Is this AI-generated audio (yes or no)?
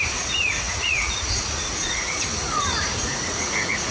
yes